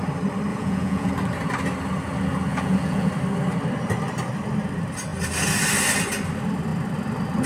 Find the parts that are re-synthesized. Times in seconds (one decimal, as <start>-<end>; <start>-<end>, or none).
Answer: 0.5-1.1; 2.5-3.1